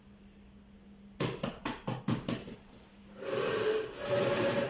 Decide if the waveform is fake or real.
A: fake